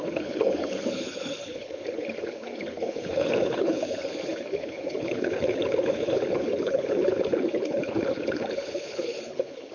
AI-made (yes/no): yes